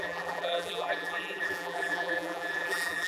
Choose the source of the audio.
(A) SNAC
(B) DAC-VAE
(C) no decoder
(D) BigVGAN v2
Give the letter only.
D